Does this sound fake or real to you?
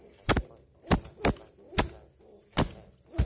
real